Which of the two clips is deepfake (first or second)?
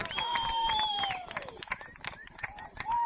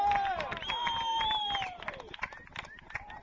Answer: first